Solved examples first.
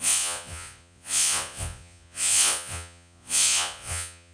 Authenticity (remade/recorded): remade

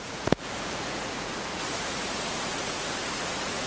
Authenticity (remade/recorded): remade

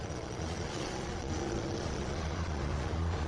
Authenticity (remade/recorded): remade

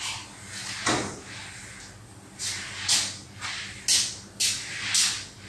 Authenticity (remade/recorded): recorded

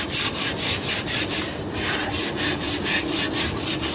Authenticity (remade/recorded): recorded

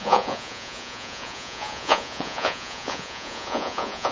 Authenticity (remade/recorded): remade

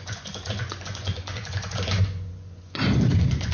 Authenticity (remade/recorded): remade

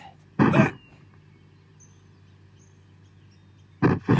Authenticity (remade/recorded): recorded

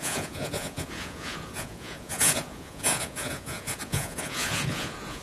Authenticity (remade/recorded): remade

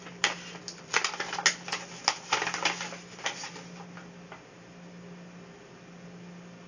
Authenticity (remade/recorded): recorded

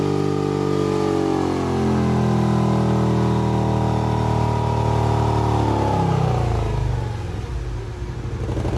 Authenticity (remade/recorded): recorded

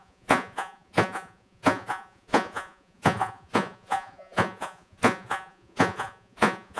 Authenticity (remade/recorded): remade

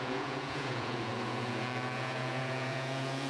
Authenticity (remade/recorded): remade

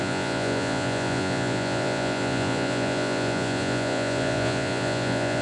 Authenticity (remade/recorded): remade